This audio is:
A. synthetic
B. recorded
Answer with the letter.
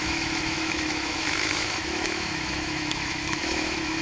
A